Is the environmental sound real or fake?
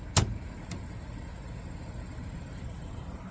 real